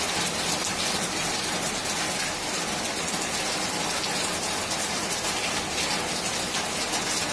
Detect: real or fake real